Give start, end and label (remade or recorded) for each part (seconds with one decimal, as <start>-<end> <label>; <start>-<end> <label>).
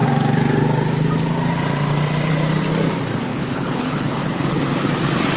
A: 0.0-3.3 recorded; 3.3-4.6 remade; 4.6-5.4 recorded